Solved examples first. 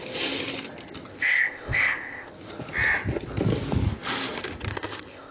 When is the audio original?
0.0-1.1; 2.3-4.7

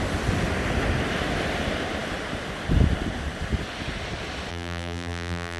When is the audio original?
0.0-4.5

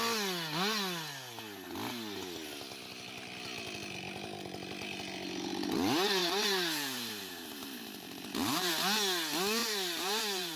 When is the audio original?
0.0-6.2; 8.7-9.6

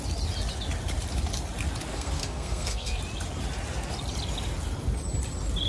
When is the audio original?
0.0-1.9; 3.0-5.7

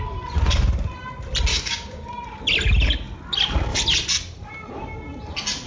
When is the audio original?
0.0-1.5; 2.1-5.7

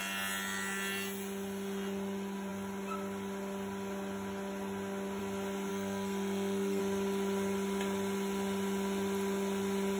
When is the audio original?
0.0-5.7; 6.8-10.0